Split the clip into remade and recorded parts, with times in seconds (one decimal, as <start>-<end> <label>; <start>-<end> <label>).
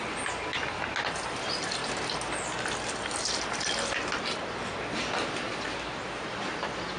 0.0-7.0 recorded